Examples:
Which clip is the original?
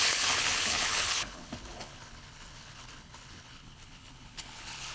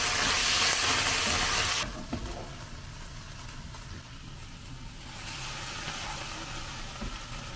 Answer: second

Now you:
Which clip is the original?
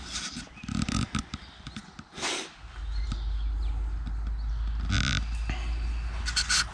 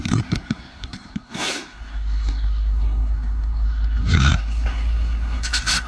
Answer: first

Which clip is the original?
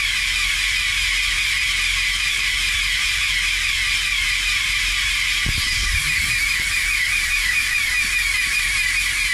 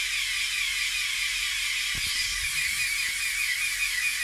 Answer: second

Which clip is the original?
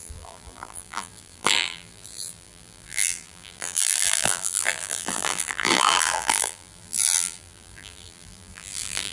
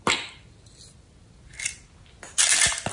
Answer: second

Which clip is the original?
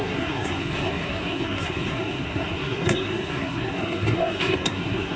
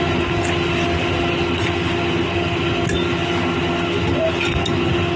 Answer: second